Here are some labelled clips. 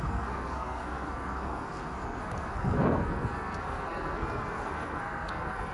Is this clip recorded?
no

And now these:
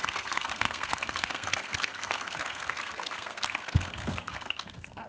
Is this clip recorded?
no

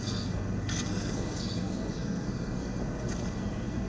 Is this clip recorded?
no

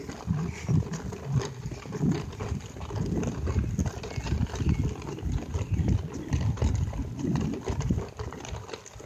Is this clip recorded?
yes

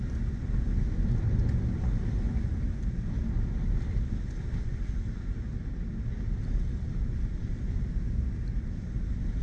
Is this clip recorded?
yes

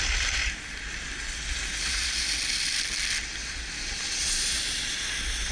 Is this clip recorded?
yes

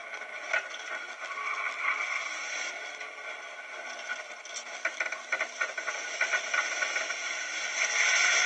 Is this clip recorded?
yes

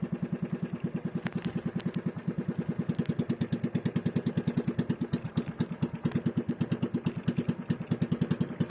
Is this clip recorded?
yes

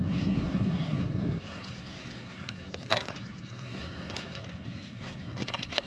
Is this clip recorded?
no